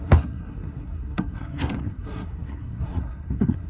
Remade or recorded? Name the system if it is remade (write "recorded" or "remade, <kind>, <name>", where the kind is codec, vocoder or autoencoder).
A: remade, codec, SNAC